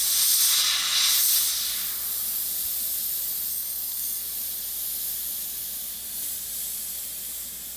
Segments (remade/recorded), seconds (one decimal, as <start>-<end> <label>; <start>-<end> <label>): 0.0-3.5 recorded; 3.5-4.2 remade; 4.2-7.8 recorded